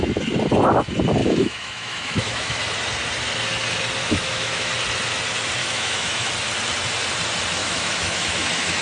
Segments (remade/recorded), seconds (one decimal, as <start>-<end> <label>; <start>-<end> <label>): 0.0-1.2 recorded; 1.2-2.6 remade; 2.6-4.0 recorded; 4.0-4.7 remade; 4.7-5.6 recorded; 5.6-6.3 remade; 6.3-7.6 recorded; 7.6-8.8 remade